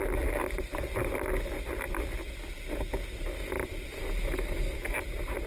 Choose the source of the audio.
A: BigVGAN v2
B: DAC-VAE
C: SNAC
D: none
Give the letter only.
D